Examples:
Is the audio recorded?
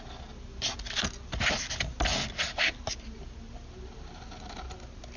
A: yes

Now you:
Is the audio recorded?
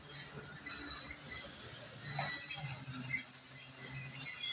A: yes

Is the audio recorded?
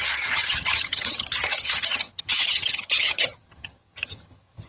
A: no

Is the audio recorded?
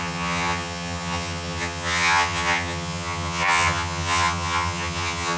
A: no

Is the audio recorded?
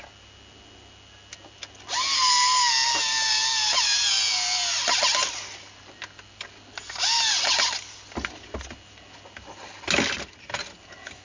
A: yes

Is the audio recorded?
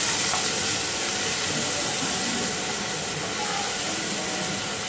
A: yes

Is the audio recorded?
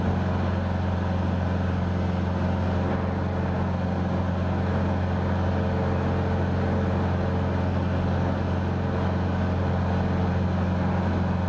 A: yes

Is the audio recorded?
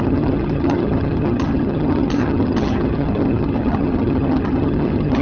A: no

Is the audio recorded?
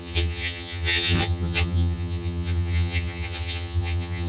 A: no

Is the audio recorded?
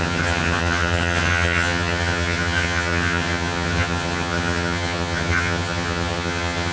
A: no